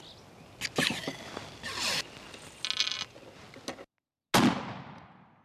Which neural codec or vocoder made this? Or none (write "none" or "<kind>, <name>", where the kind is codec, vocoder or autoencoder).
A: none